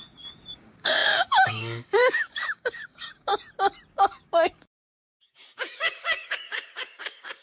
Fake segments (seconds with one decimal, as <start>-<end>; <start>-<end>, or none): 0.0-3.3; 3.9-7.4